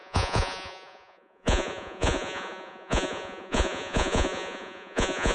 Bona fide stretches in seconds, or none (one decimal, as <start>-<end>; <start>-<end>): none

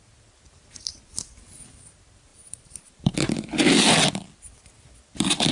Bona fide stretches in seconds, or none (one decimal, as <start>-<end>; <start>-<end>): 0.0-2.3; 3.1-5.5

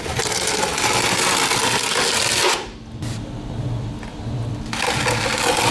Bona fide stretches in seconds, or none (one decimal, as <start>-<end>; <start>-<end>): 0.0-5.7

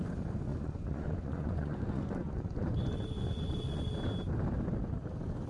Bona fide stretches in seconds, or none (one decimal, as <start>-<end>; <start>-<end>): 0.0-0.5; 3.8-5.5

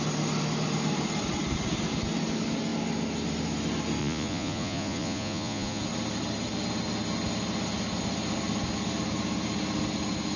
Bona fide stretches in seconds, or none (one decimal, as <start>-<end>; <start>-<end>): 0.0-4.0; 5.8-10.4

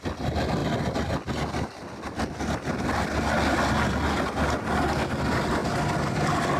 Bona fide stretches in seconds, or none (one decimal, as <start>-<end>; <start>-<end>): 0.0-6.6